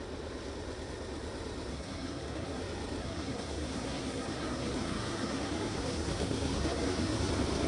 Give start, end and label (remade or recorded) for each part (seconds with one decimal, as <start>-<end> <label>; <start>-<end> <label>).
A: 0.0-1.7 recorded; 1.7-2.6 remade; 2.6-3.0 recorded; 3.0-7.3 remade; 7.3-7.7 recorded